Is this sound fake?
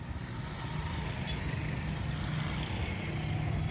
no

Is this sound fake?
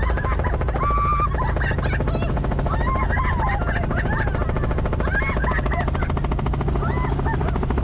no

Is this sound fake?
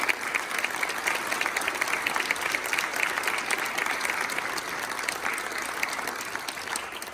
no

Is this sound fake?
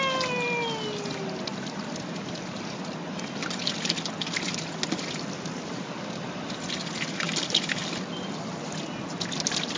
no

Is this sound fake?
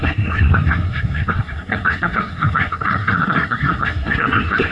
yes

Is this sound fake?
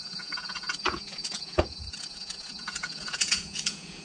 yes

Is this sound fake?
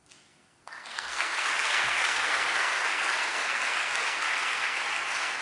yes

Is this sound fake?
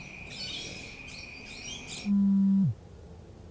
no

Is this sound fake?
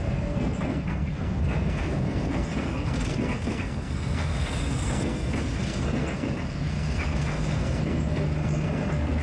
yes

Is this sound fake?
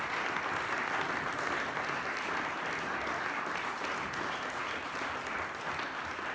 no